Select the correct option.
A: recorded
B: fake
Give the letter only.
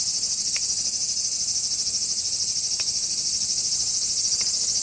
A